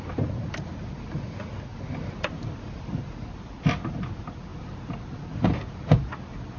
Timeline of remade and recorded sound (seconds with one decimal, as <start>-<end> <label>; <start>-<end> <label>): 0.0-1.7 recorded; 1.7-3.0 remade; 3.0-4.5 recorded; 4.5-5.8 remade; 5.8-6.6 recorded